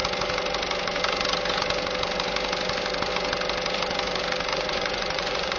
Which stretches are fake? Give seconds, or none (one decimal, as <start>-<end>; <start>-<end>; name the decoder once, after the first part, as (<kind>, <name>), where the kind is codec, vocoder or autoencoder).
4.5-5.6 (vocoder, Vocos)